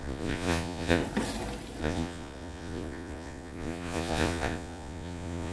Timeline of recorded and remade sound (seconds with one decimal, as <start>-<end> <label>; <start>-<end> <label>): 0.0-1.0 remade; 1.0-1.8 recorded; 1.8-5.5 remade